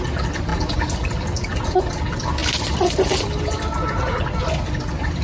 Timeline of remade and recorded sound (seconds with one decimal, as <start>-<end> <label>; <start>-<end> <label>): 0.0-5.2 recorded

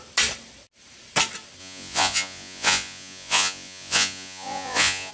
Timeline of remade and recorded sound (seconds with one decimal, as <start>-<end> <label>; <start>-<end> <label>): 0.0-1.6 recorded; 1.6-5.1 remade

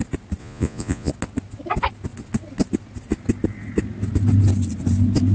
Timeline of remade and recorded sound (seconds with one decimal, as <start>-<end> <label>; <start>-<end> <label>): 0.0-0.4 recorded; 0.4-1.1 remade; 1.1-5.3 recorded

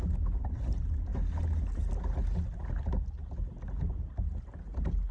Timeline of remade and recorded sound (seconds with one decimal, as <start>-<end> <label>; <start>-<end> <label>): 0.0-5.1 recorded

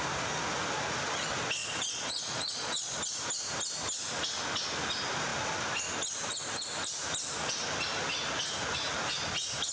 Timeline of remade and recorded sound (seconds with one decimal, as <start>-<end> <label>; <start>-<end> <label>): 0.0-1.6 recorded; 1.6-3.0 remade; 3.0-9.7 recorded

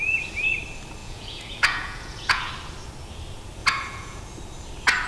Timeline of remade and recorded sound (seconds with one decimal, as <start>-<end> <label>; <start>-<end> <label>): 0.0-1.0 recorded; 1.0-2.5 remade; 2.5-3.6 recorded; 3.6-4.2 remade; 4.2-5.1 recorded

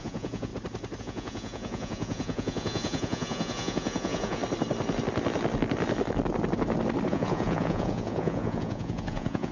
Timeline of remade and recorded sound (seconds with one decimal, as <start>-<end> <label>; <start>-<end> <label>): 0.0-0.5 remade; 0.5-1.0 recorded; 1.0-4.4 remade; 4.4-7.1 recorded; 7.1-9.5 remade